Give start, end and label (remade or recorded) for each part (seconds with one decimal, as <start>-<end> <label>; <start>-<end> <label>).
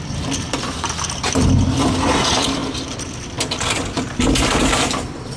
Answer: 0.0-5.4 recorded